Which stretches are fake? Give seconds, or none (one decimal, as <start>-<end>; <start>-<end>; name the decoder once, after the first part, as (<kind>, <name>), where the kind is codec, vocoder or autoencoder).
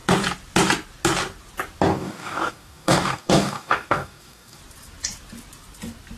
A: 1.9-4.6 (codec, DAC)